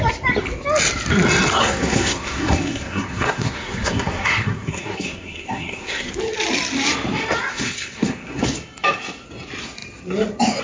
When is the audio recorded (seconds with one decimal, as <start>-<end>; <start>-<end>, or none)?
0.0-1.6; 6.1-7.5; 8.4-10.6

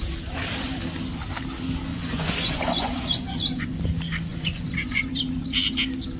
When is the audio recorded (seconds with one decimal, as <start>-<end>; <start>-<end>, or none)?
0.0-1.9; 3.7-4.3; 5.0-6.2

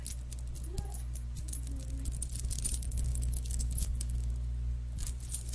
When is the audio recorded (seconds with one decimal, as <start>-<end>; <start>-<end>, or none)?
0.0-3.1; 4.3-5.5

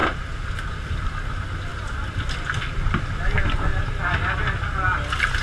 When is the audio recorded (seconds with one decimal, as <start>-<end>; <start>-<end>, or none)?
0.0-5.4

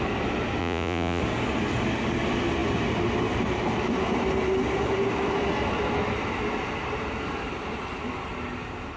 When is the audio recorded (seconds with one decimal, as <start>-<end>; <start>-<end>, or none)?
0.0-0.6; 1.2-9.0

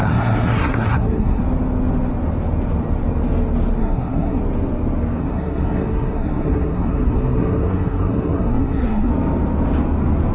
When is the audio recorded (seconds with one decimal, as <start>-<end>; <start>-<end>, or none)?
1.4-3.8; 4.4-5.2; 9.1-10.3

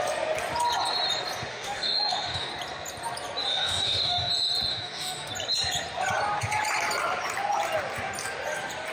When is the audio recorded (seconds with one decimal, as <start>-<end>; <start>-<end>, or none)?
0.0-1.5; 2.5-3.5; 4.3-4.7; 5.3-8.9